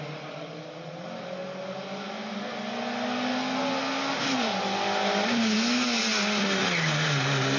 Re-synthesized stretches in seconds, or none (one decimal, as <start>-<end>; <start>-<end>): none